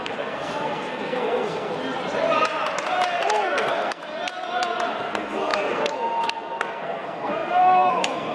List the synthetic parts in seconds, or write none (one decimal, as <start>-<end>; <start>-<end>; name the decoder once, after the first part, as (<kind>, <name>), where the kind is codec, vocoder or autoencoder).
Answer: 0.0-1.7 (codec, SNAC); 3.2-4.0; 5.0-8.3